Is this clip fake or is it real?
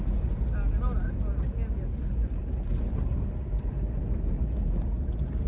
real